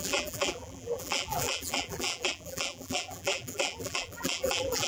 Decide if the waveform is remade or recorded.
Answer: remade